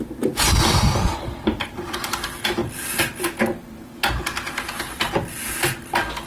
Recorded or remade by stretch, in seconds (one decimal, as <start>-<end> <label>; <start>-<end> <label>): 0.0-6.3 recorded